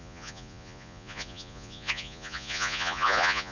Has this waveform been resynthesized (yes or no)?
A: yes